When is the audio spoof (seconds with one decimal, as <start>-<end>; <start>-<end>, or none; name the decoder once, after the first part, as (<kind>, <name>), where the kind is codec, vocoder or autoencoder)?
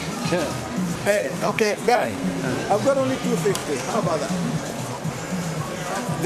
1.0-2.4 (codec, SNAC)